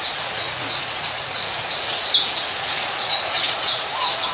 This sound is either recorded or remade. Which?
remade